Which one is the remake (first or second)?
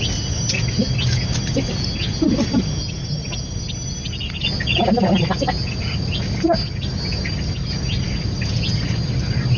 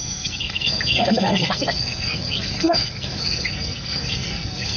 second